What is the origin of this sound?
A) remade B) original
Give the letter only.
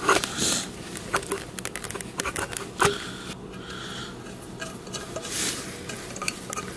B